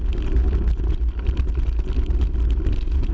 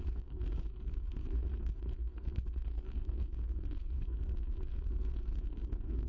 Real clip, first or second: first